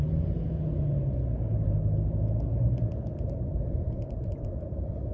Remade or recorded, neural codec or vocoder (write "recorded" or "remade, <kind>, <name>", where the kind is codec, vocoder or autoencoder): recorded